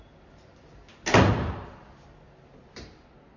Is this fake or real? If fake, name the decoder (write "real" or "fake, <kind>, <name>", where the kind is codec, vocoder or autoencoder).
real